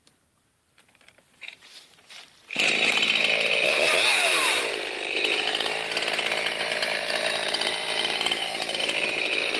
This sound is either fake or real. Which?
fake